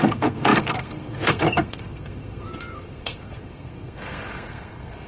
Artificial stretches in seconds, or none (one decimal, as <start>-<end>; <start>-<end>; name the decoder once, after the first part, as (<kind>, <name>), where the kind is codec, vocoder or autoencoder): 0.0-5.1 (codec, SNAC)

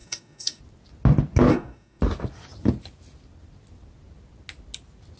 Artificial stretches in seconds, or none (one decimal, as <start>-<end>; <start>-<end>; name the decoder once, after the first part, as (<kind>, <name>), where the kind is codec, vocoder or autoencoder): 0.0-0.6 (codec, DAC); 1.5-2.0